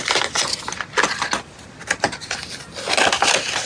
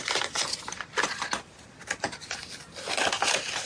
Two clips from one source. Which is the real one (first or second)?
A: first